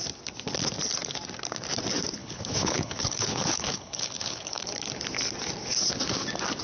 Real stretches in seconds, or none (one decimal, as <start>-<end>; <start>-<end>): 0.0-2.2; 4.6-6.6